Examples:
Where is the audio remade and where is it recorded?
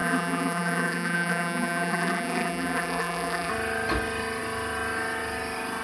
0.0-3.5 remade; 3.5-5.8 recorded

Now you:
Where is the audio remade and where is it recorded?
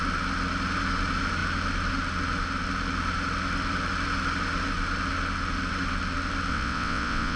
0.0-6.5 recorded; 6.5-7.4 remade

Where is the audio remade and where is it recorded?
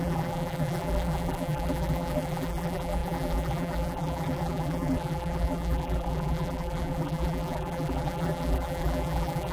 0.0-9.5 remade